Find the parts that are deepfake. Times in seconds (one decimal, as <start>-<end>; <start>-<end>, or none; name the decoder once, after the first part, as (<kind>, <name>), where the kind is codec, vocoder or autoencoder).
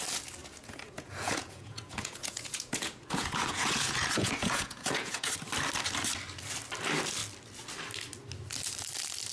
0.4-5.3 (vocoder, Vocos)